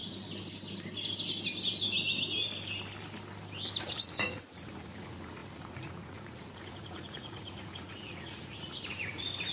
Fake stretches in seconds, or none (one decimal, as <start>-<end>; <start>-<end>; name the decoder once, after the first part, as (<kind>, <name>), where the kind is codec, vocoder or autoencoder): 3.8-9.5 (vocoder, Vocos)